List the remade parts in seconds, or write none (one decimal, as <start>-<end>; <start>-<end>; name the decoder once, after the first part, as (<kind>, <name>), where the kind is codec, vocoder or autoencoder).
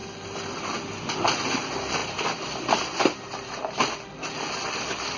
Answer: 2.0-4.1 (vocoder, BigVGAN v2)